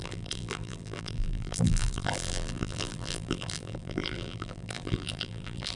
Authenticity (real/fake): fake